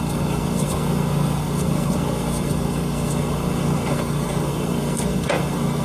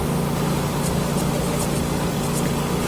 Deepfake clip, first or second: first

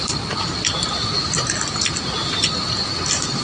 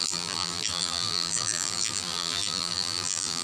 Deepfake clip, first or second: second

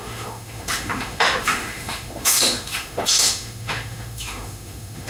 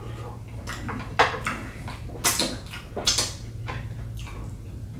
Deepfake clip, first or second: first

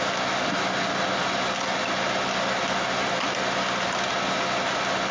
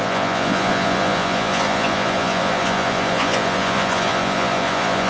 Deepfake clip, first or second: second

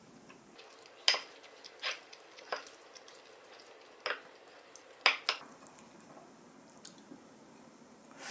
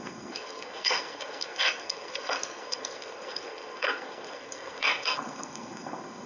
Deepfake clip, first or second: second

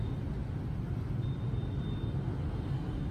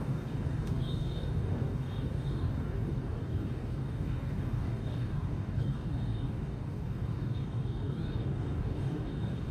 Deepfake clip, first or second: second